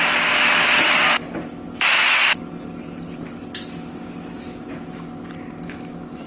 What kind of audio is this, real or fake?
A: real